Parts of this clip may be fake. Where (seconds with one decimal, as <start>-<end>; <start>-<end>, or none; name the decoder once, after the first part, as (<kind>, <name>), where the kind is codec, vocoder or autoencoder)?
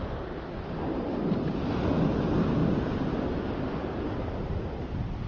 0.9-1.4 (vocoder, BigVGAN v2); 2.6-4.4